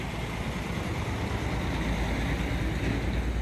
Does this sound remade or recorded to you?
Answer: recorded